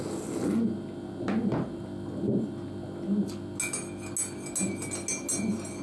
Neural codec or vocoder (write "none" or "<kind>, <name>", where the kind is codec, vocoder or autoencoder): none